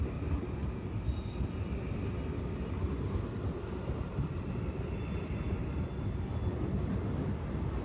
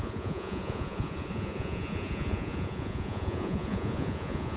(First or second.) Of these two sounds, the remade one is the second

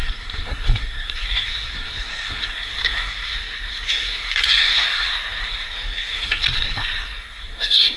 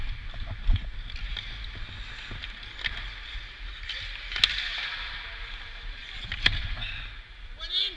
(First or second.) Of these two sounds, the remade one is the first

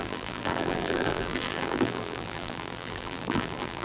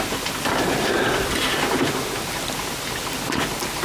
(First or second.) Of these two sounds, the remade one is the first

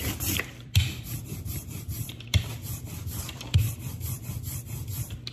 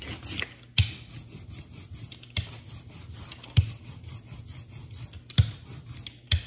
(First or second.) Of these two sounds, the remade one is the first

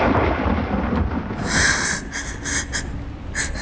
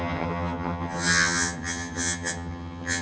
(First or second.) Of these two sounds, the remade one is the second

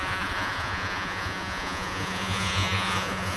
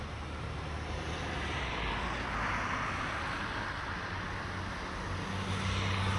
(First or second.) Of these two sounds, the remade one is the first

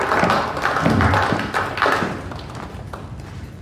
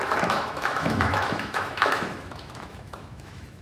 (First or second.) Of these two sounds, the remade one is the second